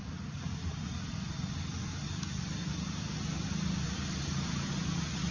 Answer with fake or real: real